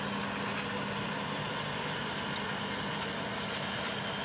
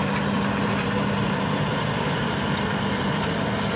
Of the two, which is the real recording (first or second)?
first